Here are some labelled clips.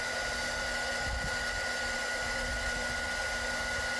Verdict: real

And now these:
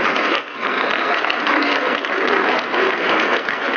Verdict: fake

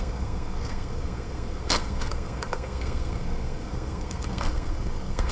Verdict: fake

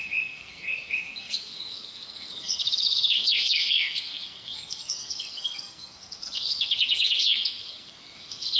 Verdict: fake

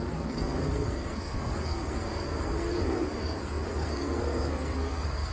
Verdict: fake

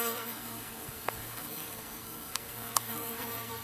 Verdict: fake